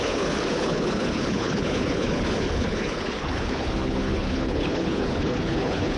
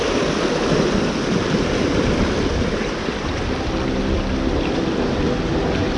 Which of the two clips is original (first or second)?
second